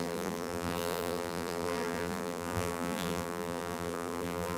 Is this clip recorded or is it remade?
remade